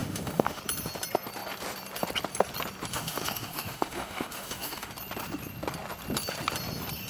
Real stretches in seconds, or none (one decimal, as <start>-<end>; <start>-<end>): 0.6-2.9; 4.9-7.1

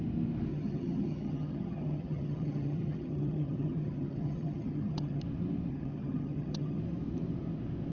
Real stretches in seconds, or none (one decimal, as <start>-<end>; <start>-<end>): 0.0-0.5; 5.2-5.7; 6.8-7.9

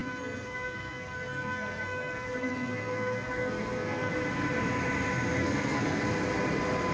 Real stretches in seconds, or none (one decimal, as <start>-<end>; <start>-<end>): 4.1-5.4; 6.0-6.9

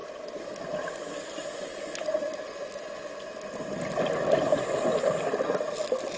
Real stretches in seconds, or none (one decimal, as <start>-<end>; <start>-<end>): 2.4-4.5

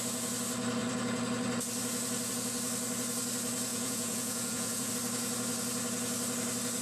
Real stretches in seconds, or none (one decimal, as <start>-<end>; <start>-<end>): 0.0-3.7; 4.9-6.8